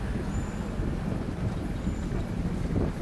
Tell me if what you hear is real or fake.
real